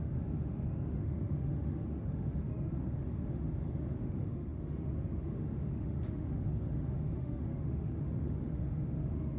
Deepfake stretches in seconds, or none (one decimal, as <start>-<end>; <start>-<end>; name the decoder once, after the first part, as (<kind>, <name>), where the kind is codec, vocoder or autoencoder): 0.0-9.4 (autoencoder, DAC-VAE)